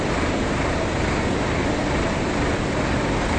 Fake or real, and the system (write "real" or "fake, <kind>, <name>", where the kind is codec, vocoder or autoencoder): real